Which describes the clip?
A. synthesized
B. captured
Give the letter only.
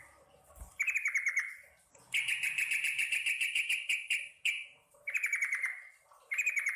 A